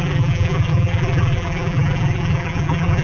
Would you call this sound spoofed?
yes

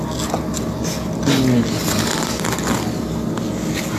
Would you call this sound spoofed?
no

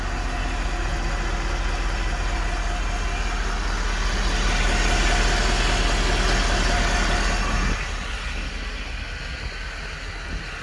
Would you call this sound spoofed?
no